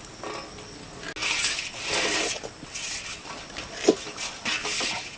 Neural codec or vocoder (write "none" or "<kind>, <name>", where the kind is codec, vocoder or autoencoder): none